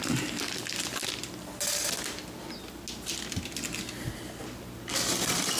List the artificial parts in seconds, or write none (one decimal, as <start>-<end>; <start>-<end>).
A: none